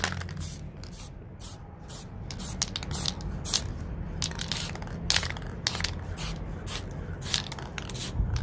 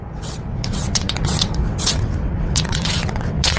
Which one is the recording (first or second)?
first